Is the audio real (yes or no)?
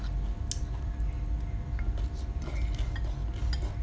yes